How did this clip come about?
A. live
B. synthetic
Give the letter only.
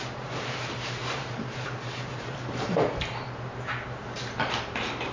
B